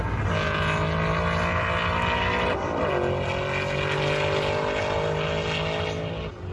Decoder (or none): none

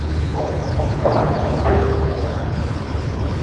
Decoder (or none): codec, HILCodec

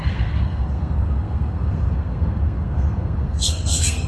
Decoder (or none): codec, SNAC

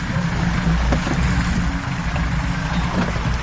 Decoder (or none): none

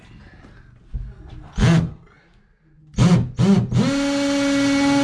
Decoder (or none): none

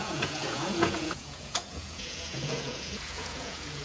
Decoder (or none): vocoder, Vocos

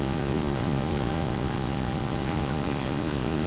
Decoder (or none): vocoder, Vocos